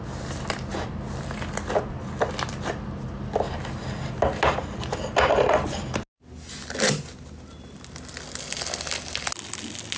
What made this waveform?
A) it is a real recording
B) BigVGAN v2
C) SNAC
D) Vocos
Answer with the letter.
A